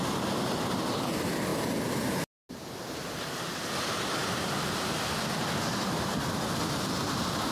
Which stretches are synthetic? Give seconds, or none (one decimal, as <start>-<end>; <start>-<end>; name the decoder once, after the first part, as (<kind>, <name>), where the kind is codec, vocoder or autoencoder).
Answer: none